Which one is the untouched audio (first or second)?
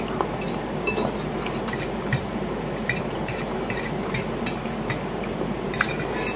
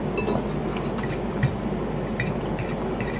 second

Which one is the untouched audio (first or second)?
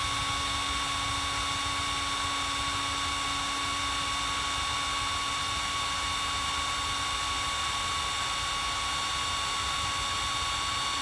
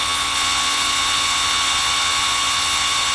first